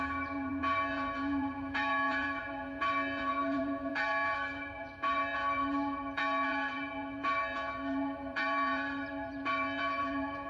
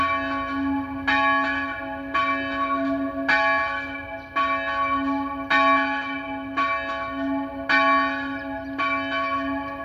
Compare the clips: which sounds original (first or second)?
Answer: second